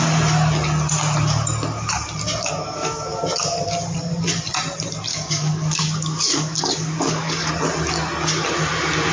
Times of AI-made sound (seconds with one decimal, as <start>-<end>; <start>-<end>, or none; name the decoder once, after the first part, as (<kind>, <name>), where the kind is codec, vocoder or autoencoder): 2.6-3.2 (codec, DAC); 5.1-7.5